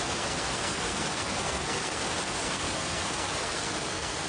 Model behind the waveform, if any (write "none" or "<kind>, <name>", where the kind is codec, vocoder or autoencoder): codec, SNAC